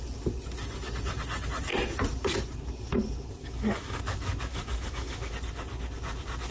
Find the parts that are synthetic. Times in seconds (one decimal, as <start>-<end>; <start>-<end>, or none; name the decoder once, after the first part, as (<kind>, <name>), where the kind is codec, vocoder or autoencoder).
3.4-4.0 (autoencoder, DAC-VAE); 4.5-5.3